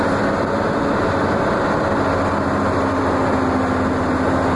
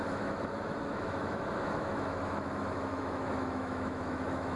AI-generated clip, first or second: second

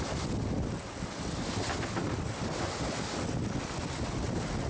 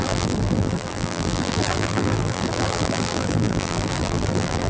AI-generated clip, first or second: second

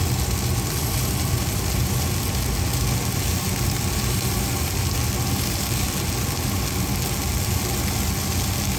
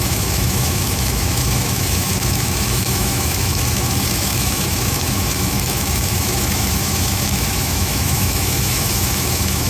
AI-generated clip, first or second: second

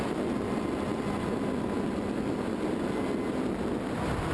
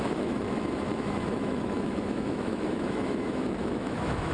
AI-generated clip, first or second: second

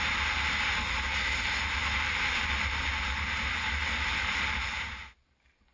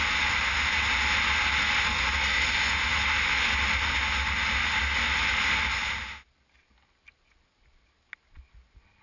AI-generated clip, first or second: first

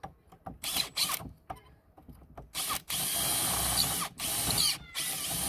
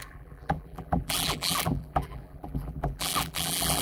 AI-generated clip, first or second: second